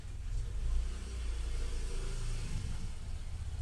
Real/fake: real